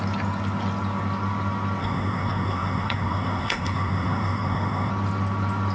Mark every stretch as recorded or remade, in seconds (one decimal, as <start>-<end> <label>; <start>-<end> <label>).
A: 0.0-1.8 recorded; 1.8-4.9 remade; 4.9-5.7 recorded